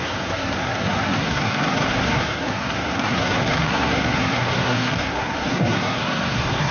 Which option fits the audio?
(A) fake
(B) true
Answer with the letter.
A